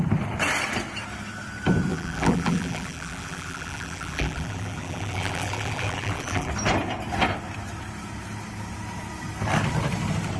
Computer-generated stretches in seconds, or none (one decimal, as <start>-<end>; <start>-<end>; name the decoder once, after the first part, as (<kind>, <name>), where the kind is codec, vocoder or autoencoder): 1.9-6.5 (vocoder, BigVGAN v2)